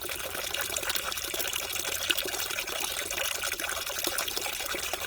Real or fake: real